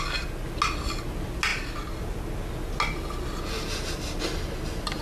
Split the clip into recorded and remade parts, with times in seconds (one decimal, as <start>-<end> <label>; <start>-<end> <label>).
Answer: 0.0-5.0 recorded